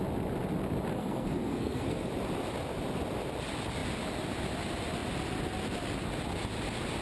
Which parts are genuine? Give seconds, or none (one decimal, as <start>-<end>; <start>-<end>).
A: 0.0-0.9; 2.1-7.0